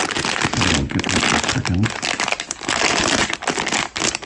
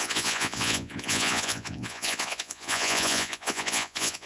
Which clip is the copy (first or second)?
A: second